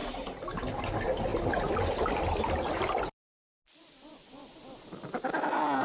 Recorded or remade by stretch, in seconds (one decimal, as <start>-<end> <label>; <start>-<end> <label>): 0.0-5.8 recorded